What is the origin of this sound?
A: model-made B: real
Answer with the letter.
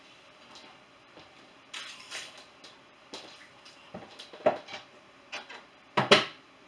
B